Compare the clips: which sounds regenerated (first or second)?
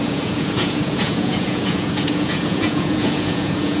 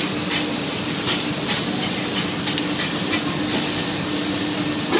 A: first